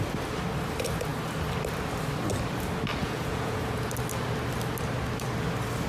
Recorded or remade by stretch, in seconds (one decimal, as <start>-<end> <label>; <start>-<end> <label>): 0.0-3.0 recorded; 3.0-3.9 remade; 3.9-5.9 recorded